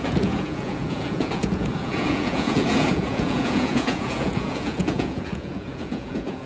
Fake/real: fake